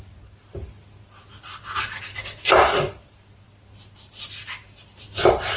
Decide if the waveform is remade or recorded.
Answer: recorded